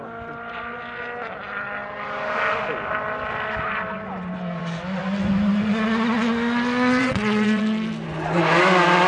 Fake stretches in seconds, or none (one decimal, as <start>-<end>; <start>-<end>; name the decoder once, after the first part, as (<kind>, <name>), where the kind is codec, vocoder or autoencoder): 7.0-7.6 (vocoder, WaveNeXt)